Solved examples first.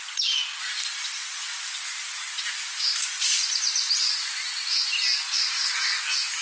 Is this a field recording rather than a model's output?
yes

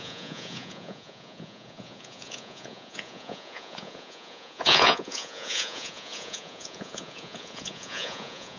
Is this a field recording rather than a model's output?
no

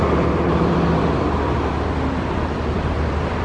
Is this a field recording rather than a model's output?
no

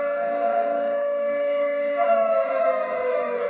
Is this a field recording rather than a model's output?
no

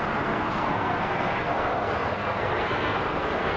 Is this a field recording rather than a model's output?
no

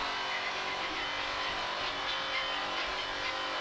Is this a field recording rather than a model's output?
yes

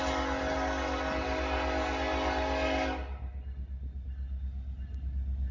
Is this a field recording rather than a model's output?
yes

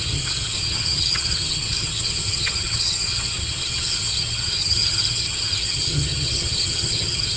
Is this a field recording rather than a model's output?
no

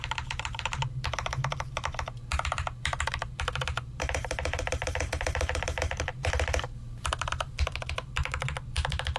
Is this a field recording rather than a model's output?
no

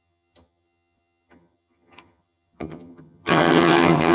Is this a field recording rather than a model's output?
no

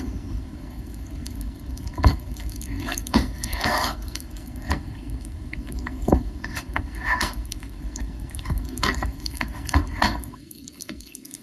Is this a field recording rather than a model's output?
no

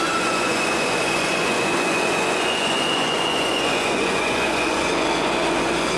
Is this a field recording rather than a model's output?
no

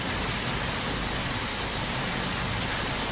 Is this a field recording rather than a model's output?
yes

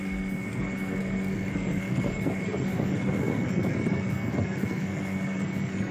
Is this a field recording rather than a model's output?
no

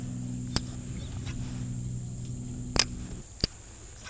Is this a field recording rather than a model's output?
yes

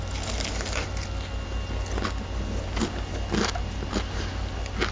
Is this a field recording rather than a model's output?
yes